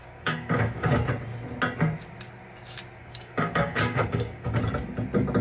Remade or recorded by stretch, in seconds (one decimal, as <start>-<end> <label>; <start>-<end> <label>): 0.0-0.9 remade; 0.9-3.0 recorded; 3.0-4.6 remade; 4.6-5.4 recorded